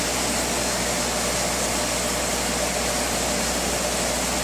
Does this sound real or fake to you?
real